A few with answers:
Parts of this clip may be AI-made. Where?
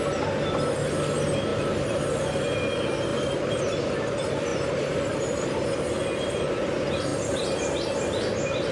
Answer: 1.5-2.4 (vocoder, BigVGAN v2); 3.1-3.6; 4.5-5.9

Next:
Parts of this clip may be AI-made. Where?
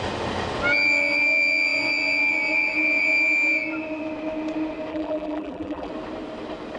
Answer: 4.9-5.9 (vocoder, BigVGAN v2)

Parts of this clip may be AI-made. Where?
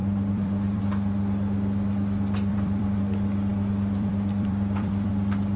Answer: 0.0-0.8 (vocoder, BigVGAN v2); 2.5-3.0; 3.5-5.1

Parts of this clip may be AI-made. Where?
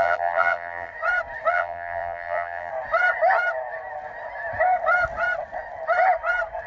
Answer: 0.0-0.9 (vocoder, BigVGAN v2); 1.5-2.7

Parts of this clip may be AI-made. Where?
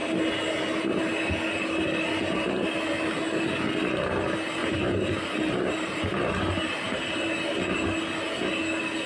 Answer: 4.6-7.3 (vocoder, BigVGAN v2)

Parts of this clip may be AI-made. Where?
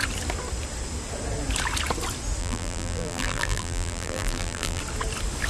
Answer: 2.4-4.8 (vocoder, BigVGAN v2)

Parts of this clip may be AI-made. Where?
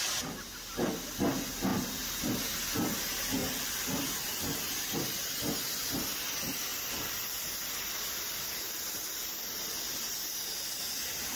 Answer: 1.7-2.4 (vocoder, BigVGAN v2); 3.4-5.9; 6.7-7.4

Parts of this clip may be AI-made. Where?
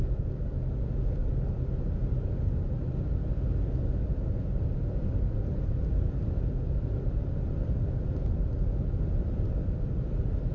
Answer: none